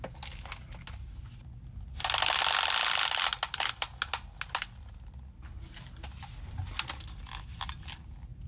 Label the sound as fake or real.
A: real